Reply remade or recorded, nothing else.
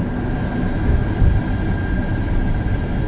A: recorded